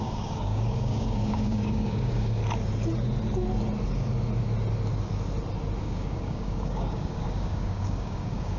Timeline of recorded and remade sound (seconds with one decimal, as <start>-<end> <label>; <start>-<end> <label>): 0.0-2.4 remade; 2.4-5.8 recorded; 5.8-8.6 remade